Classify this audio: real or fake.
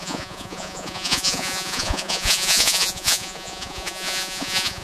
fake